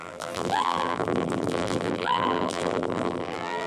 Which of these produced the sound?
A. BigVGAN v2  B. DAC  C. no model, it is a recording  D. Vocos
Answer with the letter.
A